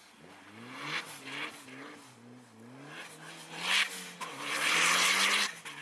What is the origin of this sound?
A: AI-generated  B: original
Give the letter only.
B